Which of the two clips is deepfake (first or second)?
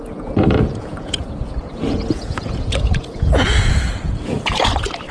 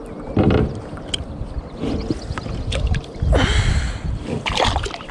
first